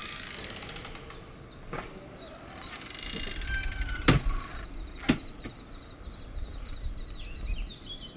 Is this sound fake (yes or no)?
no